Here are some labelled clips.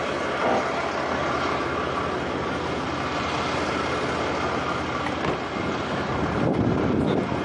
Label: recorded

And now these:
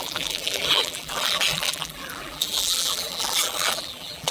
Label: remade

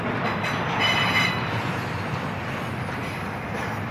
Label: recorded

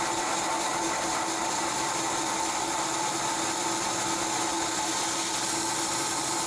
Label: recorded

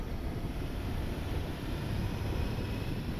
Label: remade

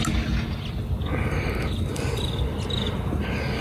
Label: recorded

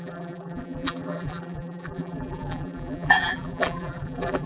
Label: remade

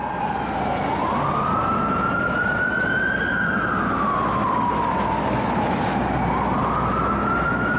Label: recorded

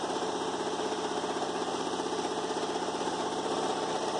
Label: remade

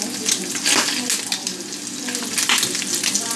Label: recorded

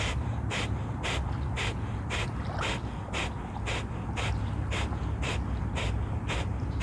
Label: recorded